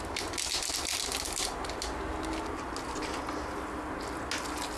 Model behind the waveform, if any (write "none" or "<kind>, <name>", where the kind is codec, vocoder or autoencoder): none